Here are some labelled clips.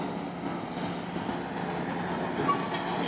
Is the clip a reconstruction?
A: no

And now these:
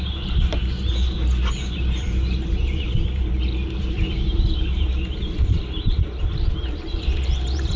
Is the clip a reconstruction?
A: yes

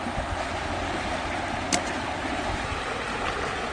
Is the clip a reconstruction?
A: no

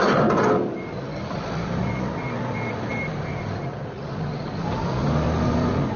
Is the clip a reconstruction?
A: no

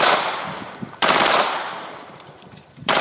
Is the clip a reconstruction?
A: yes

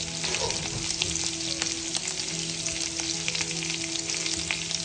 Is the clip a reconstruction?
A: no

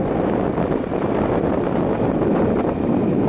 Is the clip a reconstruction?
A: no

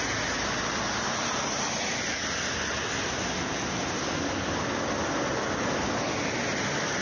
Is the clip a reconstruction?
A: no